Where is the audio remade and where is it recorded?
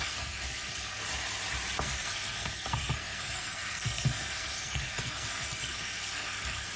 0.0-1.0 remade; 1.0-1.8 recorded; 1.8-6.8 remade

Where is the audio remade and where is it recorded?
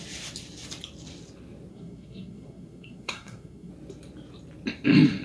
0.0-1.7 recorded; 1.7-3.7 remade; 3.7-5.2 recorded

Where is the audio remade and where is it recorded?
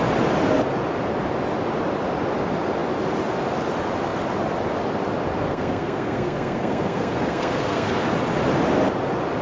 0.0-5.5 recorded; 5.5-8.0 remade; 8.0-9.4 recorded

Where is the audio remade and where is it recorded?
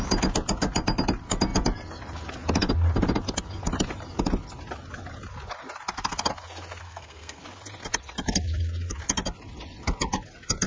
0.0-6.8 recorded; 6.8-7.4 remade; 7.4-10.7 recorded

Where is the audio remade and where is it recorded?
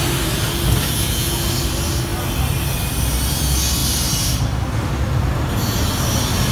0.0-6.5 recorded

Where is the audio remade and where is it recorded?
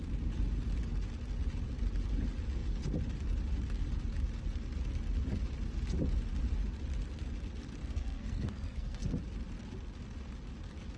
0.0-7.8 recorded; 7.8-9.2 remade; 9.2-11.0 recorded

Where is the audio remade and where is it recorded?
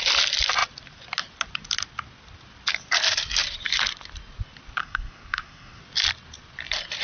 0.0-4.8 recorded; 4.8-5.8 remade; 5.8-7.0 recorded